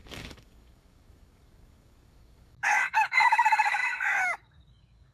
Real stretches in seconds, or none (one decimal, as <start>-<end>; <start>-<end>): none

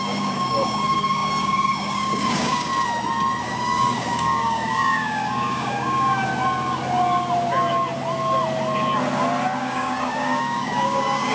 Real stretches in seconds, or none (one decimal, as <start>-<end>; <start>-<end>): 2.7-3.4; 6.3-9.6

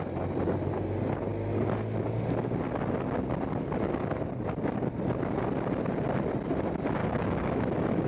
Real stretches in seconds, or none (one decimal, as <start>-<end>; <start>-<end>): 0.0-7.0; 7.6-8.1